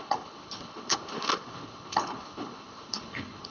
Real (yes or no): no